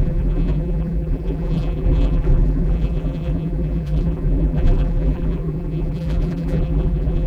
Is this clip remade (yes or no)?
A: yes